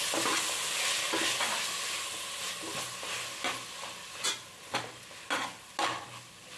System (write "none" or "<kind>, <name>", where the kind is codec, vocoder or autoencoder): none